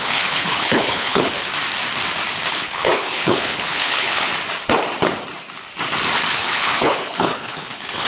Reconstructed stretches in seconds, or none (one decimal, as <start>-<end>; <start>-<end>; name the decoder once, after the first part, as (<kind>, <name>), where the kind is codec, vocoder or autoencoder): 0.0-1.5 (codec, HILCodec); 2.5-4.3; 6.3-8.1